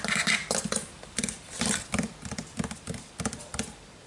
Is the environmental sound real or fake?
real